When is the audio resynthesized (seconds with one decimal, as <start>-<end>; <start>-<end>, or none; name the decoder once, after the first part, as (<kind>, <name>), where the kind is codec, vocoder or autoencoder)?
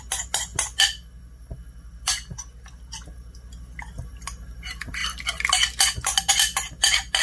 none